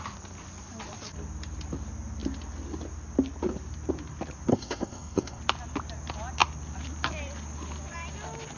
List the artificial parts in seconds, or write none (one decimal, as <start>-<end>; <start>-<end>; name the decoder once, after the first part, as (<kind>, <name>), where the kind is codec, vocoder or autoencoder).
4.5-5.4 (codec, SNAC)